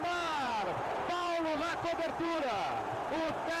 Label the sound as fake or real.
fake